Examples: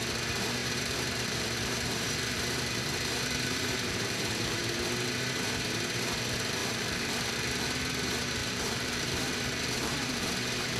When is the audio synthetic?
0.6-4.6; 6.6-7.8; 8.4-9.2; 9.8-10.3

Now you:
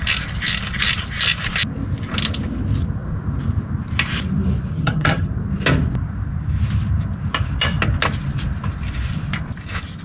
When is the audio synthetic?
4.7-5.3

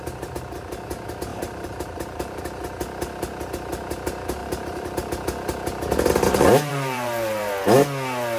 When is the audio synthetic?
1.3-2.4; 4.4-5.1; 6.7-7.5